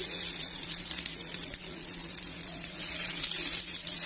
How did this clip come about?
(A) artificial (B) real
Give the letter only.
A